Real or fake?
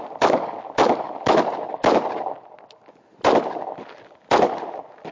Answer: real